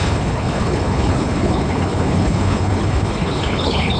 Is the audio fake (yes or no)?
yes